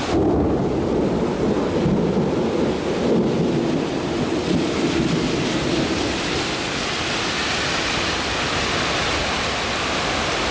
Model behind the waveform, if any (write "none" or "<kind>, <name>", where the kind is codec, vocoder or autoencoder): none